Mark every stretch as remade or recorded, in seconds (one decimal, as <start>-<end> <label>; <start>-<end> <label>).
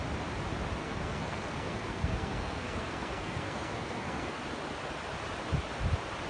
0.0-0.8 recorded; 0.8-4.4 remade; 4.4-6.3 recorded